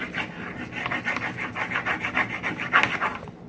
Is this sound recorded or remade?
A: recorded